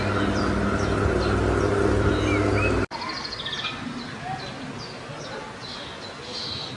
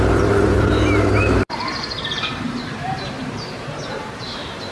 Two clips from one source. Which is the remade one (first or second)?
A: second